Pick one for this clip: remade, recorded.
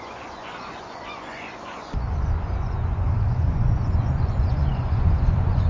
remade